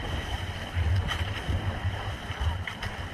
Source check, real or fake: real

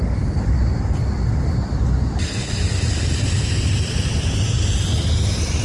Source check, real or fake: real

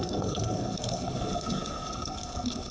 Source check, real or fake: fake